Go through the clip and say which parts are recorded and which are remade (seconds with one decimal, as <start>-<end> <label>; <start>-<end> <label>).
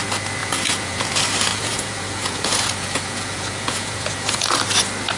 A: 0.0-0.4 recorded; 0.4-1.1 remade; 1.1-1.5 recorded; 1.5-4.6 remade; 4.6-5.2 recorded